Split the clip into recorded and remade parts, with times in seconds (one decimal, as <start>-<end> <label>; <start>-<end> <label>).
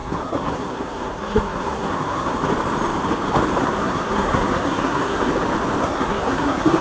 0.0-2.4 remade; 2.4-3.6 recorded; 3.6-5.3 remade; 5.3-5.8 recorded; 5.8-6.8 remade